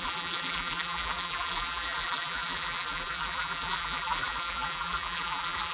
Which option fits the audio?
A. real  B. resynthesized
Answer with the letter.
B